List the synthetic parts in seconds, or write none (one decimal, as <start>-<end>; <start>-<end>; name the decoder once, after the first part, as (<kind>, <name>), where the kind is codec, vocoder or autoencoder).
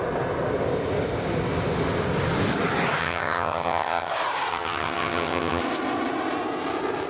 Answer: 3.0-4.1 (vocoder, HiFi-GAN); 4.5-5.6